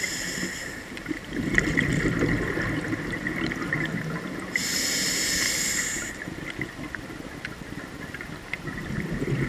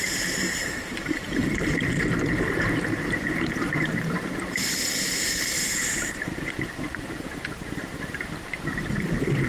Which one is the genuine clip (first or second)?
first